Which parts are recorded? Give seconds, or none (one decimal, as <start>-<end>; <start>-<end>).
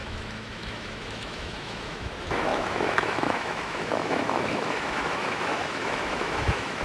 none